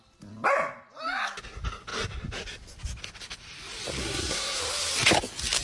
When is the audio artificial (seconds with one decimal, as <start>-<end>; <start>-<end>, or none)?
4.0-4.6